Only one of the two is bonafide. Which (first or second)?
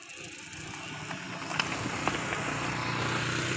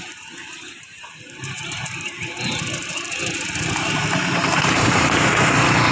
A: first